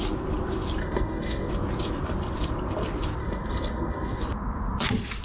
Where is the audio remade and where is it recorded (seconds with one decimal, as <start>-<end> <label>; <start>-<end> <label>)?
0.0-0.8 recorded; 0.8-1.5 remade; 1.5-3.2 recorded; 3.2-4.2 remade; 4.2-5.2 recorded